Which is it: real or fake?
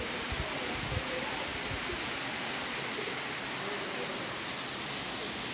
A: real